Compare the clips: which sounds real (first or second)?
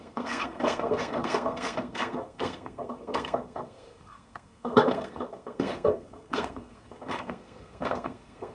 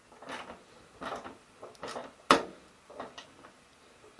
second